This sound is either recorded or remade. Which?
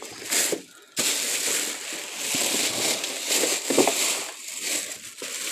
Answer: recorded